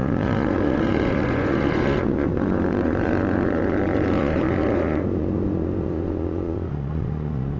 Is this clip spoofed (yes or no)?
yes